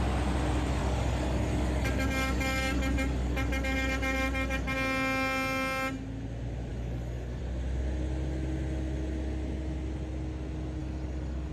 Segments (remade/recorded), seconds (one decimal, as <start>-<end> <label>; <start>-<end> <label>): 0.0-0.8 recorded; 0.8-4.7 remade; 4.7-6.7 recorded; 6.7-7.4 remade; 7.4-10.8 recorded; 10.8-11.5 remade